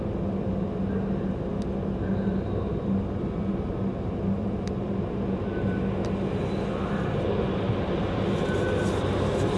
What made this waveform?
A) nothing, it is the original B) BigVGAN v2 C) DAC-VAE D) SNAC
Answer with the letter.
A